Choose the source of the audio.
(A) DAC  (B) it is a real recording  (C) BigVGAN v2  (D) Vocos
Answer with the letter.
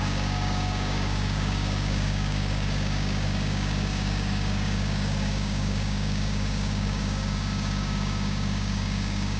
A